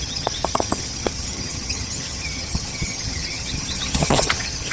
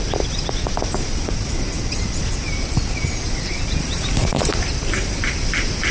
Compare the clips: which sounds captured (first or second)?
second